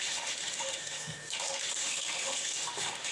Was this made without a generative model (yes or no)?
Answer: no